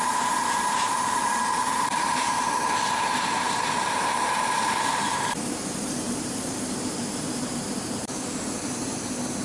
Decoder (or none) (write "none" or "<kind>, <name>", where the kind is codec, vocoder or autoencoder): vocoder, BigVGAN v2